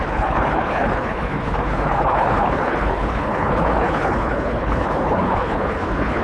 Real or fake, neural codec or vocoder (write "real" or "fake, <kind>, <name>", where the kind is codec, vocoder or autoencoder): fake, codec, HILCodec